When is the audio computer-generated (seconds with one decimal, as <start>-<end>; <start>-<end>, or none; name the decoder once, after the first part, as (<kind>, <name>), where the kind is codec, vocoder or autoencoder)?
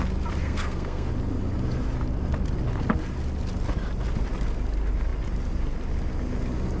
0.4-1.1 (codec, SNAC)